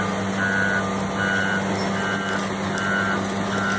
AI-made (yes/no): no